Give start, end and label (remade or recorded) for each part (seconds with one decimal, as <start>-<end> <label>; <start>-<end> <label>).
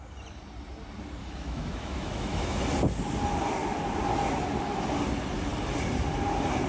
0.0-1.2 recorded; 1.2-2.6 remade; 2.6-6.7 recorded